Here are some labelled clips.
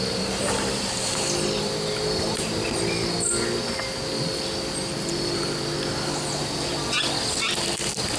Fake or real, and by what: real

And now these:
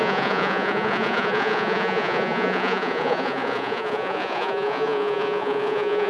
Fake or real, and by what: fake, vocoder, Vocos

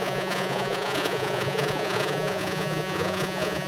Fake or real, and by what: fake, vocoder, Vocos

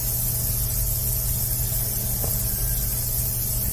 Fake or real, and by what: real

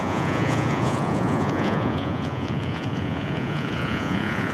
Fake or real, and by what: fake, vocoder, Vocos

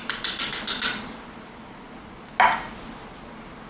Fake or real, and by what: real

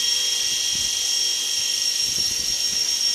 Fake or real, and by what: real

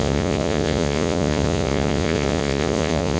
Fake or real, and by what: fake, vocoder, Vocos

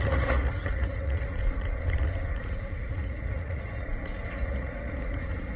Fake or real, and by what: fake, vocoder, Vocos